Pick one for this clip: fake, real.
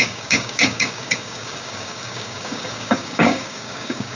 fake